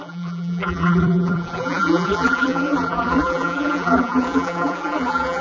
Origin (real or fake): fake